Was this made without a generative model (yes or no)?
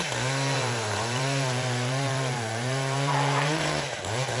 no